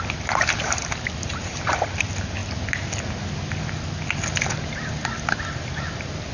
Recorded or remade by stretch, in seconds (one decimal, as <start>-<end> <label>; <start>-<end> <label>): 0.0-6.3 recorded